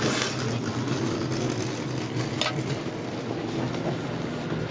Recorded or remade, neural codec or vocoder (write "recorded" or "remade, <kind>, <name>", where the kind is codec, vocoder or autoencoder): recorded